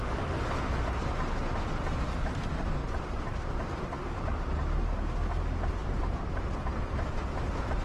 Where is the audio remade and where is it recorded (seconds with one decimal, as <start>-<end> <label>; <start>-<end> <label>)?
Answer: 0.0-5.8 recorded; 5.8-6.5 remade; 6.5-7.8 recorded